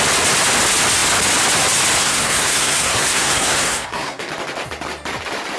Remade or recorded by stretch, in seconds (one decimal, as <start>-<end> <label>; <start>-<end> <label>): 0.0-2.0 recorded; 2.0-4.3 remade; 4.3-5.6 recorded